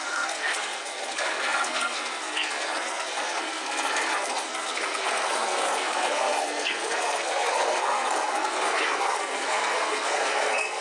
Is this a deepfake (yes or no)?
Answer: yes